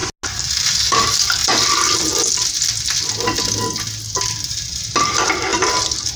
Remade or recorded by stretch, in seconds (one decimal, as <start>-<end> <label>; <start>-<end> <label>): 0.0-0.6 recorded; 0.6-1.4 remade; 1.4-4.4 recorded; 4.4-6.2 remade